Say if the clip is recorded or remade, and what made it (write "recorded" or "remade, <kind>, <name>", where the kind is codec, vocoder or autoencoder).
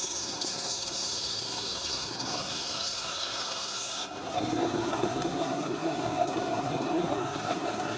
remade, codec, SNAC